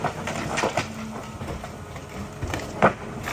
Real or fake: real